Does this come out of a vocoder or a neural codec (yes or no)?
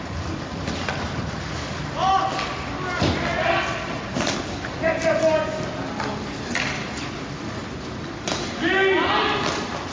no